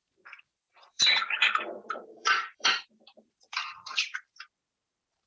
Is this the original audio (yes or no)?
no